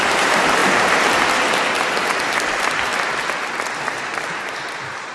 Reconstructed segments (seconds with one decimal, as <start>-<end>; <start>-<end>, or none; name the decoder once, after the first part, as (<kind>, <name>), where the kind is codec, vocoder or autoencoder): 0.0-0.6 (vocoder, BigVGAN v2); 2.3-2.9; 3.8-5.1